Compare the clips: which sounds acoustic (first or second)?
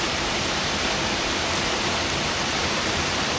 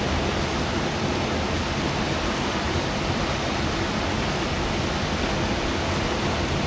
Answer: second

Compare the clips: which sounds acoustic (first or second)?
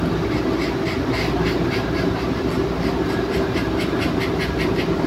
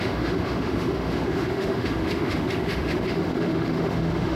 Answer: first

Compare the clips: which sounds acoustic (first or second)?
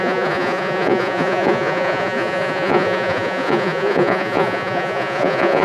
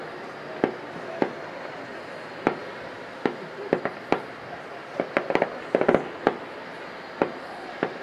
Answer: second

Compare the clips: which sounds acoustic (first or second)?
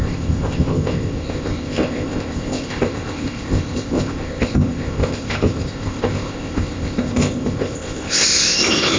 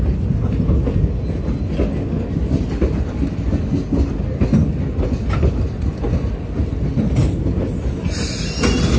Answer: second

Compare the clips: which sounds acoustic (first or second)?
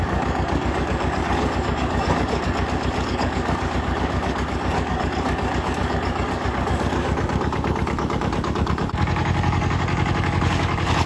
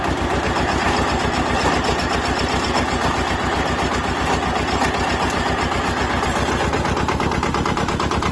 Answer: second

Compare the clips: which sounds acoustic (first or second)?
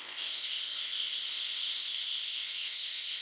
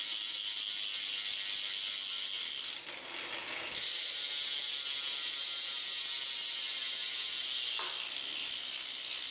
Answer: second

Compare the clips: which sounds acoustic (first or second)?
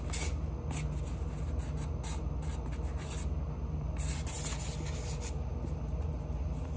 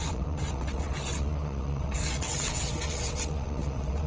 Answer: first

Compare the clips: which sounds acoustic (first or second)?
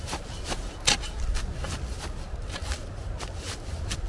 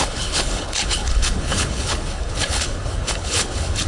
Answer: first